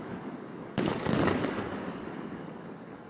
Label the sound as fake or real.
fake